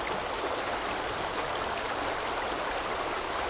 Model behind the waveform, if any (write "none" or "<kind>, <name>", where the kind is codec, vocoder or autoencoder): none